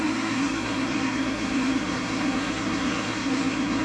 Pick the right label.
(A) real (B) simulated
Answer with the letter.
B